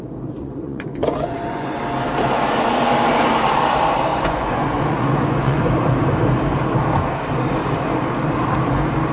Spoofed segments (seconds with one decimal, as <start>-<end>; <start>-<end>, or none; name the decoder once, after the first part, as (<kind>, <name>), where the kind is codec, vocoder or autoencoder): 0.4-1.8 (vocoder, Vocos); 4.1-5.6